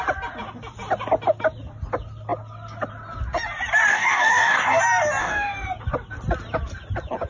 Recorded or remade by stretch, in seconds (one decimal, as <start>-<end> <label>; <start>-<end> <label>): 0.0-3.9 recorded; 3.9-4.8 remade; 4.8-5.2 recorded; 5.2-5.7 remade; 5.7-7.3 recorded